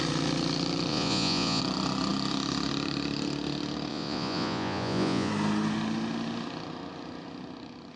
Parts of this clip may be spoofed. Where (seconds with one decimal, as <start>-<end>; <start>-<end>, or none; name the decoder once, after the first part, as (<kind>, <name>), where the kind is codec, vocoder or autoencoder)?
0.9-1.6 (vocoder, Vocos); 3.9-5.3